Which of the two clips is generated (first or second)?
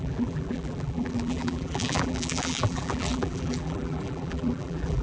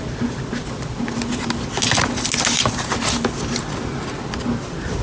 first